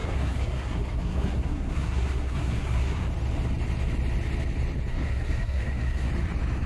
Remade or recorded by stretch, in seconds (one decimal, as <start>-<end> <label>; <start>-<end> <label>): 0.0-3.1 remade; 3.1-4.9 recorded; 4.9-6.1 remade; 6.1-6.7 recorded